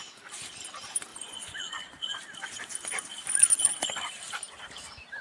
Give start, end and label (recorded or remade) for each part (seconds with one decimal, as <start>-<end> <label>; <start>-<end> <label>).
0.0-1.1 recorded; 1.1-2.2 remade; 2.2-5.2 recorded